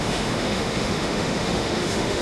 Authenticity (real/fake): fake